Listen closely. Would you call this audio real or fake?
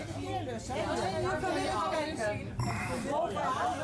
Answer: real